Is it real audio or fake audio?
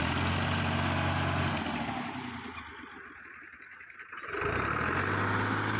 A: real